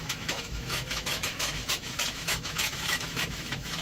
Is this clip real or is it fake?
fake